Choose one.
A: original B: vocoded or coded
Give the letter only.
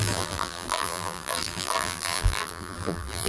B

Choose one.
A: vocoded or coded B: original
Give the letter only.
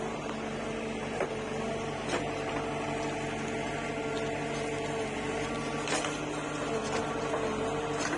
B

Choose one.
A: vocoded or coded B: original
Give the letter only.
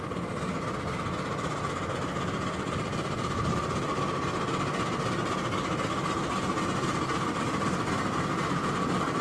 B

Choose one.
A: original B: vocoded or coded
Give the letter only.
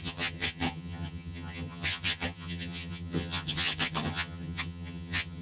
B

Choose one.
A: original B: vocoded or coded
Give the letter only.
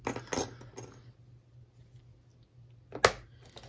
A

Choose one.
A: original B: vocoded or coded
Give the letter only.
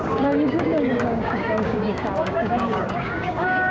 B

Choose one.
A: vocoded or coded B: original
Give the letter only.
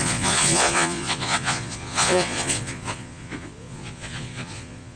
A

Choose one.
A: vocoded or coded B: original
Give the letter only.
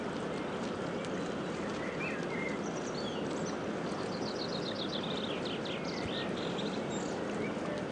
B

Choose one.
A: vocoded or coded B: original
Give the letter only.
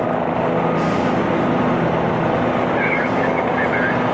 B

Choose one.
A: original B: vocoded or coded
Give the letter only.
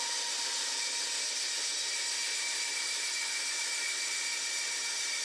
A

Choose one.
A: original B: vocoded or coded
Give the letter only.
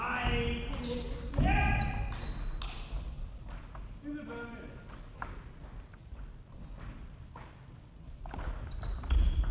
A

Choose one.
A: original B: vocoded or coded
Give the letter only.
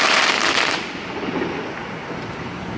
A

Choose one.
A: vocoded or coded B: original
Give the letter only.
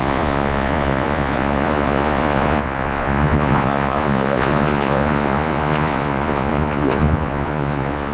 A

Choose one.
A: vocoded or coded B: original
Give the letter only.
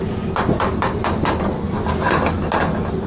B